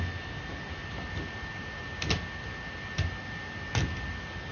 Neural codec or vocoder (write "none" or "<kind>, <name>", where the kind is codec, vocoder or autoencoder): none